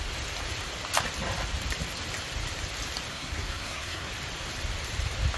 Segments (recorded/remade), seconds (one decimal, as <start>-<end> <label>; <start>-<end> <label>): 0.0-3.1 recorded; 3.1-4.1 remade; 4.1-5.4 recorded